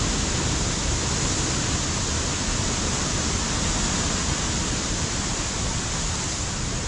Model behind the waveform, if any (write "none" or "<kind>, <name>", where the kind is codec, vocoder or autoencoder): none